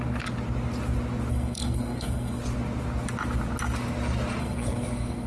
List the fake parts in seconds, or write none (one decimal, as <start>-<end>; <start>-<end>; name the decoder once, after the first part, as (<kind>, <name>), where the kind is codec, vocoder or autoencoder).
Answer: 1.3-2.4 (codec, SNAC); 4.4-5.3